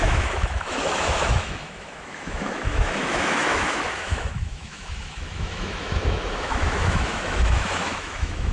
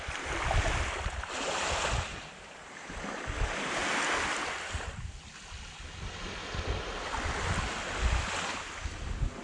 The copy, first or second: first